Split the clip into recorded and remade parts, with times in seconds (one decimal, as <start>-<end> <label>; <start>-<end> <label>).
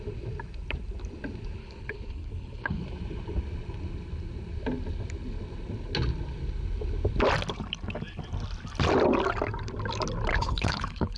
0.0-1.6 recorded; 1.6-2.8 remade; 2.8-10.3 recorded; 10.3-11.2 remade